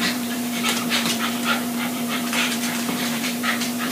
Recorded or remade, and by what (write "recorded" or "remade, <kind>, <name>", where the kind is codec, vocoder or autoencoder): remade, vocoder, BigVGAN v2